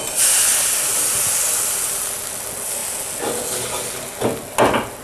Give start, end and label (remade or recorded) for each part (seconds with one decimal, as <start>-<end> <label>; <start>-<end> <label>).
0.0-5.0 recorded